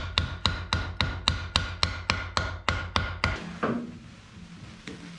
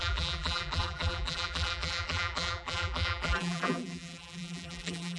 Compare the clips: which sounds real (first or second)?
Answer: first